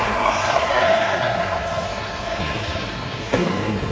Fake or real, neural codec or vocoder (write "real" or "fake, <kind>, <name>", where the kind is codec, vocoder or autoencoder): fake, codec, SNAC